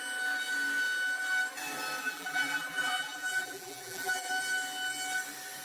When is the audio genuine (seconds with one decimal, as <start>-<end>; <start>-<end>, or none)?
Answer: 0.0-2.0; 4.3-5.6